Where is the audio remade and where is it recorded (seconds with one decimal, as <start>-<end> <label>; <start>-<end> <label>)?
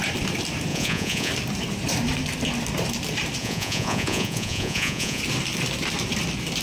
0.0-0.7 recorded; 0.7-1.3 remade; 1.3-3.4 recorded; 3.4-5.2 remade; 5.2-6.6 recorded